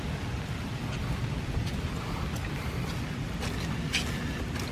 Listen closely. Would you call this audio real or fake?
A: real